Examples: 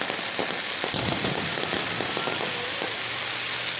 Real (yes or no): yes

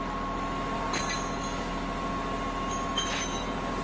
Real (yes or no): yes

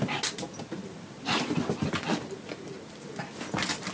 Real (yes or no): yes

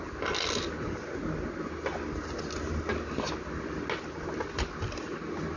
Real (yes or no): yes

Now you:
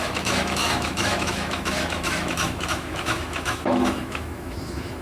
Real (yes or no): no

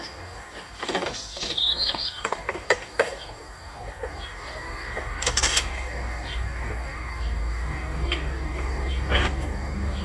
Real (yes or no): no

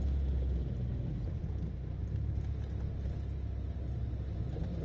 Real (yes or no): yes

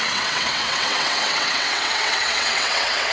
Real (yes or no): no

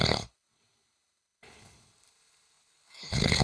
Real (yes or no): no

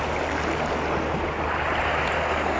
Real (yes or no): yes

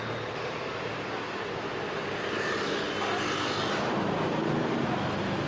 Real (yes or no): yes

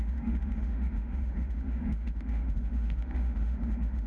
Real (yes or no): no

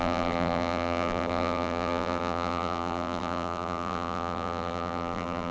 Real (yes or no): no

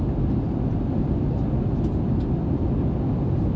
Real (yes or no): yes